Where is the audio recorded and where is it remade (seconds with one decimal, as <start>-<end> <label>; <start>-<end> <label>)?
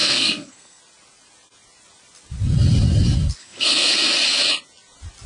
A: 0.0-0.8 remade; 0.8-3.4 recorded; 3.4-3.9 remade; 3.9-5.3 recorded